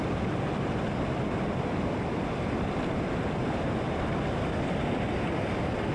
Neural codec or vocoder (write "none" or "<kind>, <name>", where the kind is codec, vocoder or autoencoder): none